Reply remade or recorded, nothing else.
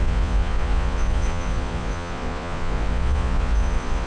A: remade